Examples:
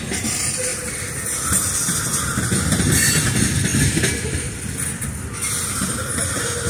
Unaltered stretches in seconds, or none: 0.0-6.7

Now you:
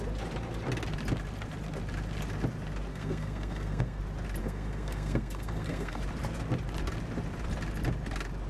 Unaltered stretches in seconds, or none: 0.0-2.9; 4.0-4.4; 6.0-8.5